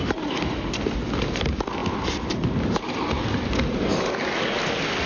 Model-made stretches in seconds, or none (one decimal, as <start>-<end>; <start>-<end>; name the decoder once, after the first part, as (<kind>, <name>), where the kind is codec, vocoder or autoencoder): none